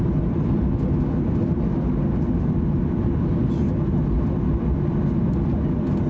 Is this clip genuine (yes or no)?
yes